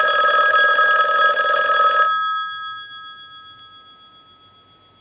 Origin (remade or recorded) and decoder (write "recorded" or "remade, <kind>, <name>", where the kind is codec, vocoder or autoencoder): recorded